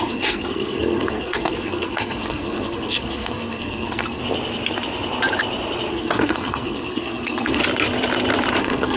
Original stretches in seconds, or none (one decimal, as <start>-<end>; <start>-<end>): 4.2-5.9; 7.6-8.6